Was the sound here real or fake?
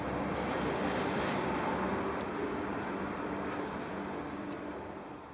real